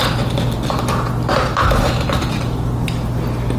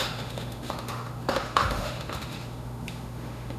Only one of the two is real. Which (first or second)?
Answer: first